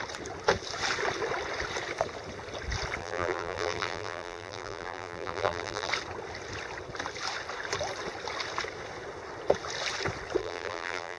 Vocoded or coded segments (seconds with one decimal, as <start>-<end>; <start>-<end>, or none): 3.0-5.9; 10.4-11.2